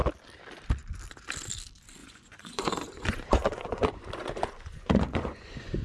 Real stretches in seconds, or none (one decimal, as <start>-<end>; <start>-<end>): 0.0-2.0